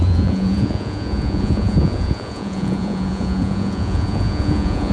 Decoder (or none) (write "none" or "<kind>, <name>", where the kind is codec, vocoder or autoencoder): vocoder, Vocos